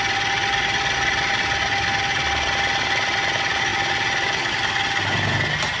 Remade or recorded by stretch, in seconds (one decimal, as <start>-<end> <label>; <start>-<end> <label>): 0.0-5.8 recorded